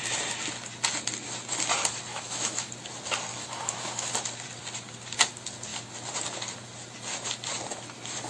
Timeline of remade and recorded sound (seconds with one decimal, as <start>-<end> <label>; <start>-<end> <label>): 0.0-2.1 recorded; 2.1-2.7 remade; 2.7-3.3 recorded; 3.3-4.1 remade; 4.1-8.3 recorded